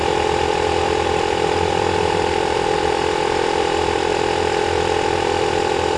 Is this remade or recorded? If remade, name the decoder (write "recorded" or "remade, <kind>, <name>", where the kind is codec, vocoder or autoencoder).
remade, vocoder, BigVGAN v2